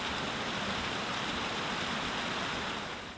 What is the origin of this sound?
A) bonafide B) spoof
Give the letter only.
A